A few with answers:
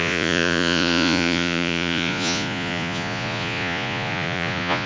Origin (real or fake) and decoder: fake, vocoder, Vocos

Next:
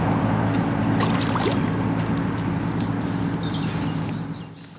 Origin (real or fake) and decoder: real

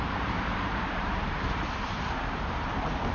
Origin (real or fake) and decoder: fake, vocoder, BigVGAN v2